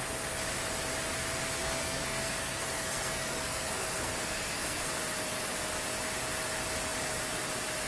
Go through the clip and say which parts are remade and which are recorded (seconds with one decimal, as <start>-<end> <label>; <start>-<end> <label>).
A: 0.0-1.6 recorded; 1.6-4.9 remade; 4.9-7.9 recorded